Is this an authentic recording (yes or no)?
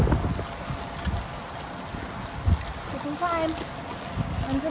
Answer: yes